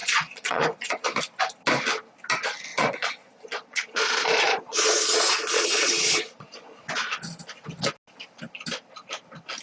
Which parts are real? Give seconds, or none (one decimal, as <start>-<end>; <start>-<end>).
1.2-2.7; 6.8-9.6